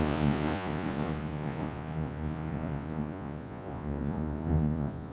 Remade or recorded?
remade